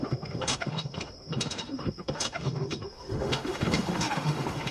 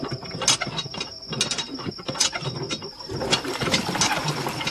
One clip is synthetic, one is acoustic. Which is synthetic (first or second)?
first